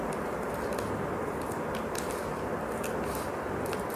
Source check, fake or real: real